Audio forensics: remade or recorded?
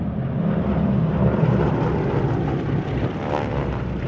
recorded